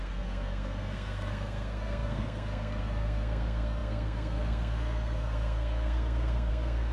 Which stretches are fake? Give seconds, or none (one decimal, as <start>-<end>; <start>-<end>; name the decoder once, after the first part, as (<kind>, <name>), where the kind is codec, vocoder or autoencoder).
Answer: 0.0-6.9 (codec, SNAC)